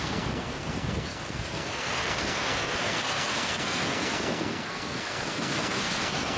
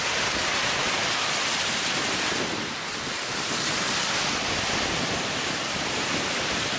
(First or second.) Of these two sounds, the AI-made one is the first